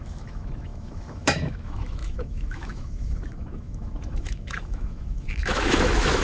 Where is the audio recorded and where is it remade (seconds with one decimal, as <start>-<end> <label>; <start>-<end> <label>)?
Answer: 0.0-6.2 remade